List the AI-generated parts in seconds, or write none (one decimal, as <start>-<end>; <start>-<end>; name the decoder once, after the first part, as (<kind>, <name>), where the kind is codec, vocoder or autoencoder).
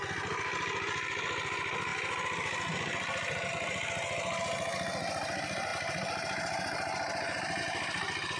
none